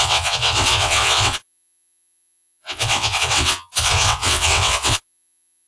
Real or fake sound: fake